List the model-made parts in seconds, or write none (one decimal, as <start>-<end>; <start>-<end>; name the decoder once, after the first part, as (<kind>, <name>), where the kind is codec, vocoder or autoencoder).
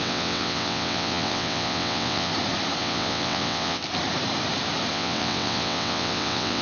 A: 0.0-2.3 (vocoder, WaveNeXt); 2.8-3.8; 4.9-6.6